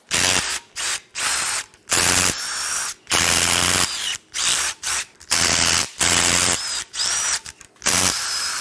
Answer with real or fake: real